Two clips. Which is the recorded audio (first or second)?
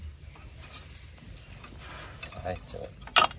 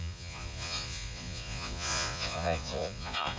first